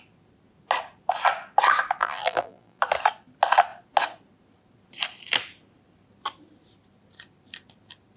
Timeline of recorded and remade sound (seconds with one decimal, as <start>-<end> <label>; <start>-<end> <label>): 0.0-2.0 recorded; 2.0-2.8 remade; 2.8-8.2 recorded